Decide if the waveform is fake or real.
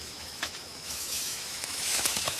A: fake